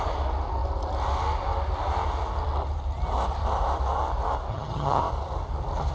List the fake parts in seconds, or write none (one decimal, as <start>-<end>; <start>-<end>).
4.5-5.0